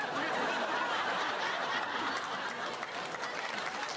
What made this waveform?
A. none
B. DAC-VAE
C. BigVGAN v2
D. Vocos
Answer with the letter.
C